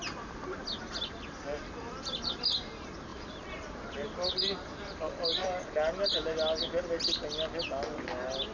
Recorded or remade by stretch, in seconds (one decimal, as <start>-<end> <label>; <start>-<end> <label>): 0.0-3.1 recorded; 3.1-5.6 remade; 5.6-8.5 recorded